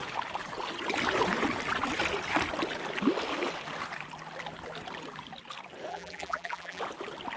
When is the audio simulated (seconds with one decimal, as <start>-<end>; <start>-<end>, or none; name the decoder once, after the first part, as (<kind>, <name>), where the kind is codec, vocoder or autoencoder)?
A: 5.9-6.8 (vocoder, BigVGAN v2)